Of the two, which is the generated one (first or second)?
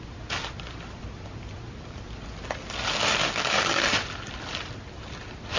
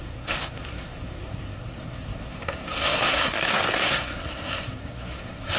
second